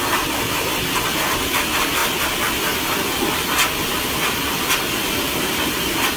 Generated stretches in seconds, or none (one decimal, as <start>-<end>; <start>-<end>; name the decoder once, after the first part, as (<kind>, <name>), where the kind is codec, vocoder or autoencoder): none